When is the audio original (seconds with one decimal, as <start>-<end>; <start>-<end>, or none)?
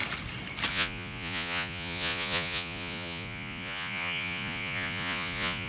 0.0-0.7